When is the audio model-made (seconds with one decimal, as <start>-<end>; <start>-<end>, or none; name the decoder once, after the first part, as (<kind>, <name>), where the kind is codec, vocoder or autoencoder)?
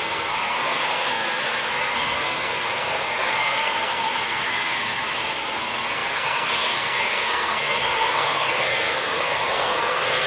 0.0-10.3 (codec, SNAC)